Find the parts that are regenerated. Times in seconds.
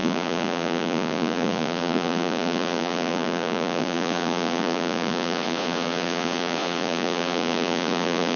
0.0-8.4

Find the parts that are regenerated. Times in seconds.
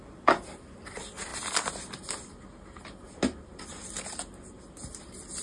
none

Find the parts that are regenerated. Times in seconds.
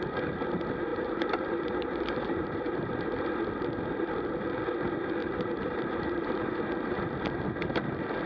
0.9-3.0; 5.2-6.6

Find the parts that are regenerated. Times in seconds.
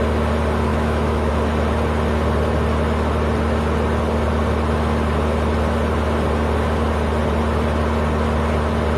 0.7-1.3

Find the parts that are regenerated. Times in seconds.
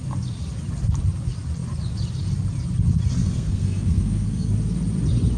3.2-4.5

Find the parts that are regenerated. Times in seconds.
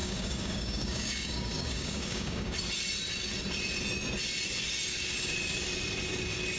0.0-2.6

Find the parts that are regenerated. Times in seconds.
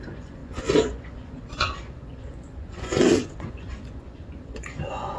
0.0-5.2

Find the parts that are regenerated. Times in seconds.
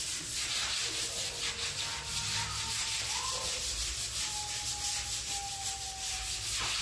none